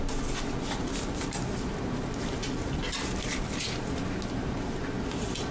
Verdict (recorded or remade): recorded